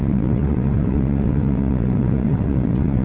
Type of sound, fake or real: fake